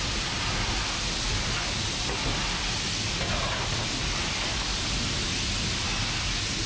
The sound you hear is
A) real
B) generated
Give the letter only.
A